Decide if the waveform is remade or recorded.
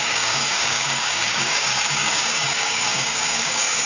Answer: remade